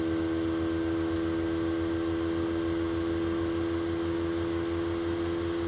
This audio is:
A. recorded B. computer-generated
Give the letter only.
A